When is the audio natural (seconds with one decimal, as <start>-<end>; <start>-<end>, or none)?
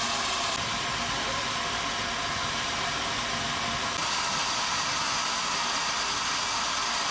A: 0.0-7.1